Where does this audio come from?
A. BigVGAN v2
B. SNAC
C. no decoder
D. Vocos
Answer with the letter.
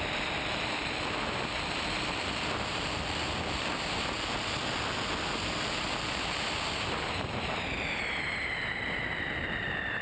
C